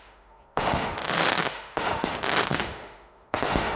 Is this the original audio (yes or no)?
no